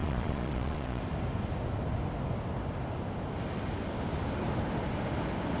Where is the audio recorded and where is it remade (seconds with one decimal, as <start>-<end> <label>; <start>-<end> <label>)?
0.0-1.0 remade; 1.0-5.6 recorded